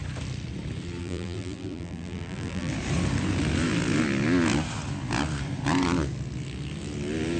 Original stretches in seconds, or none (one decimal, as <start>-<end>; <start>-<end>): 0.0-1.0; 2.7-7.4